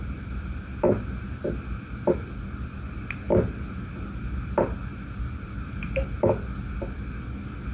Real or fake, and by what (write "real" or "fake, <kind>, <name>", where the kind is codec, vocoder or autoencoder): real